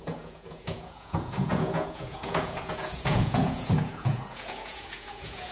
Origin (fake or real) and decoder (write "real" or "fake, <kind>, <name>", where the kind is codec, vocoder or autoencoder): fake, vocoder, Vocos